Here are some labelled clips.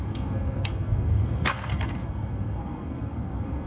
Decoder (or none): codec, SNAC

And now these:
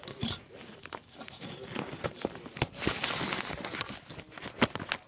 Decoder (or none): none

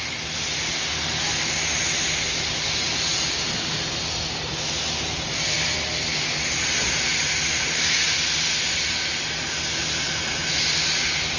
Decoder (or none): none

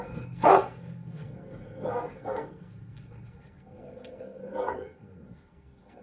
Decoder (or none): codec, SNAC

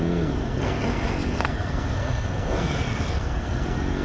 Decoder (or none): codec, SNAC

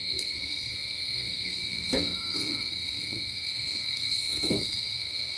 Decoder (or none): codec, SNAC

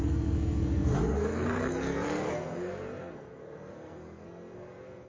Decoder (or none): codec, SNAC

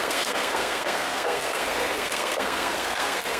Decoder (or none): codec, SNAC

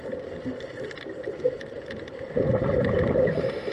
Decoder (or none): none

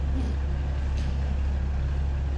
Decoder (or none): none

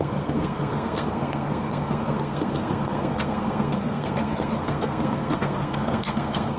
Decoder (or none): codec, SNAC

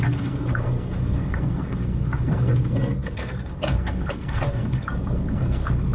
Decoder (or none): codec, SNAC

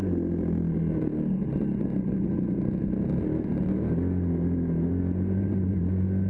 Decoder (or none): none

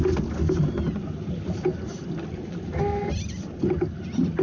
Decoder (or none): none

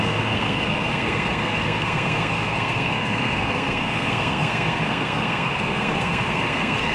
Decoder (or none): codec, SNAC